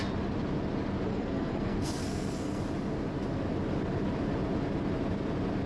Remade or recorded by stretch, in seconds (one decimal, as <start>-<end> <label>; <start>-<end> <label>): 0.0-1.1 recorded; 1.1-2.6 remade; 2.6-5.7 recorded